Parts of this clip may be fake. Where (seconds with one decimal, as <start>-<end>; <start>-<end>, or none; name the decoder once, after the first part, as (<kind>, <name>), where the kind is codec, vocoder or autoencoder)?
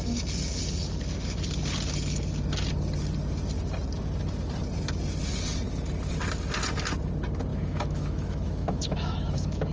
7.5-9.7 (autoencoder, DAC-VAE)